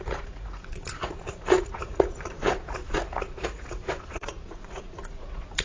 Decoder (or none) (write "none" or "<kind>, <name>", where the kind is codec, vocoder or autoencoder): vocoder, Vocos